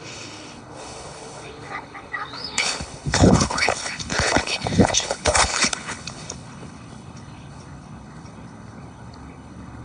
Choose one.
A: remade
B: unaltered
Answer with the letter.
A